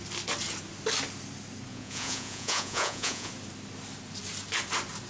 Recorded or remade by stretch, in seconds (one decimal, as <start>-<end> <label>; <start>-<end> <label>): 0.0-1.7 recorded; 1.7-3.3 remade; 3.3-5.1 recorded